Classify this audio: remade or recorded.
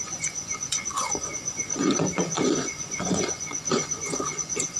remade